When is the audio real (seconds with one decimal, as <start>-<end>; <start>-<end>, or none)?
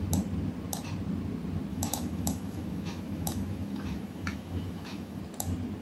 0.0-1.7; 5.2-5.8